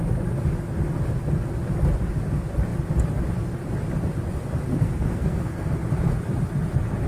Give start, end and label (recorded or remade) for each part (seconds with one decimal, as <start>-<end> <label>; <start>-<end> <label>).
0.0-4.7 recorded; 4.7-5.7 remade; 5.7-7.1 recorded